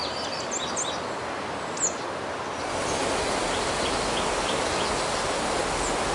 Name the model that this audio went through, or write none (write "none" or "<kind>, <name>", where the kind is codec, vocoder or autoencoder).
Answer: none